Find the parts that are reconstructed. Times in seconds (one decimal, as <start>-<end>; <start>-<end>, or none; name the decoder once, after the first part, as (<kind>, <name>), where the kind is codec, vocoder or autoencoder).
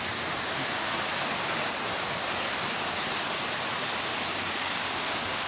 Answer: 4.3-5.5 (codec, DAC)